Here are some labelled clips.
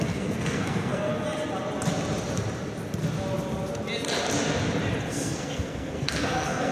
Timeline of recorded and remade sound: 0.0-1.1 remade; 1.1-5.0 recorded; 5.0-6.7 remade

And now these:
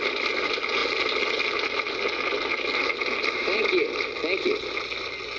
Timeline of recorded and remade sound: 0.0-5.4 recorded

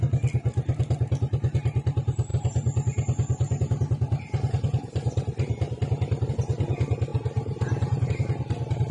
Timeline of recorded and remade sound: 0.0-7.1 recorded; 7.1-8.1 remade; 8.1-8.9 recorded

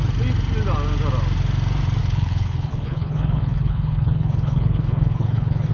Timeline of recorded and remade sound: 0.0-2.0 recorded; 2.0-5.7 remade

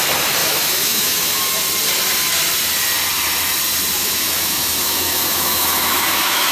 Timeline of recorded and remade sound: 0.0-0.4 recorded; 0.4-1.4 remade; 1.4-4.0 recorded; 4.0-6.5 remade

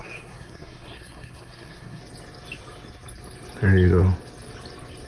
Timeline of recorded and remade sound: 0.0-2.0 remade; 2.0-5.1 recorded

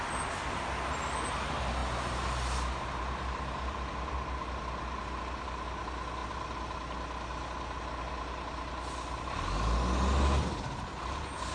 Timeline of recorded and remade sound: 0.0-11.5 recorded